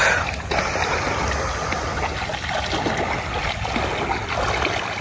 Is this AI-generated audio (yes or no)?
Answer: no